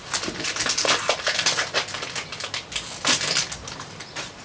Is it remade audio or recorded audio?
recorded